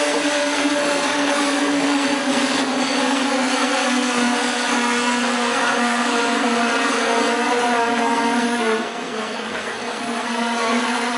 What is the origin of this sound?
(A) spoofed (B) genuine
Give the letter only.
A